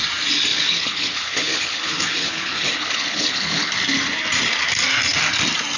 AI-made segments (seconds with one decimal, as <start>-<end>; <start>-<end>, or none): 0.5-3.7